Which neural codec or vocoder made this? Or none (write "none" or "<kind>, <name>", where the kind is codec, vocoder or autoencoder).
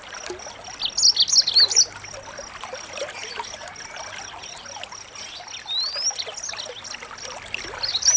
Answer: none